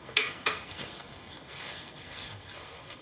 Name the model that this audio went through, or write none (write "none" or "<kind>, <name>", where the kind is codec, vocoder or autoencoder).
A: codec, SNAC